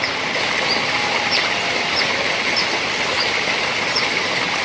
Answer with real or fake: real